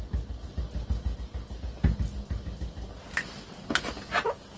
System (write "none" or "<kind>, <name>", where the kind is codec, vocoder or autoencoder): none